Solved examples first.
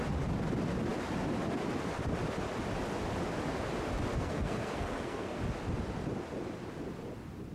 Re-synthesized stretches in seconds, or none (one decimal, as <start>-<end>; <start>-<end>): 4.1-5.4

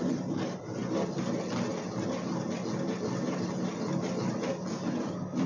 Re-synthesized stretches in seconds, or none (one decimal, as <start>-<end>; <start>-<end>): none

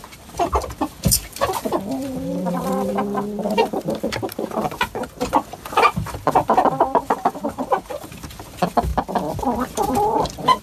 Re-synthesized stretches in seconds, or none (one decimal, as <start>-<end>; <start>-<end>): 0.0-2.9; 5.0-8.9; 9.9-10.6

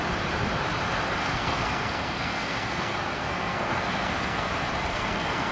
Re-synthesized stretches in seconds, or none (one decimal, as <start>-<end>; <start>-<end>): 1.2-4.5; 4.9-5.5